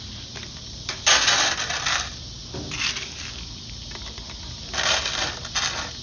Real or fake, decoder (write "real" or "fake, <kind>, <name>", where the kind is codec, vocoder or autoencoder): real